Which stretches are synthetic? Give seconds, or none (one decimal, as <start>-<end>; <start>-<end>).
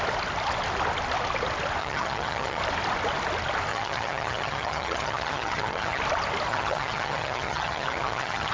1.8-2.6; 3.7-6.0; 6.5-8.5